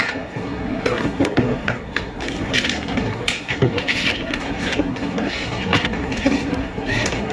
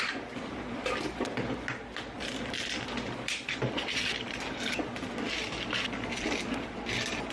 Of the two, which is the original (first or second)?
second